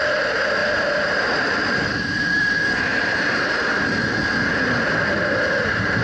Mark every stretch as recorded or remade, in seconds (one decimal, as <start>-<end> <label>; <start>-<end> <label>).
0.0-6.0 recorded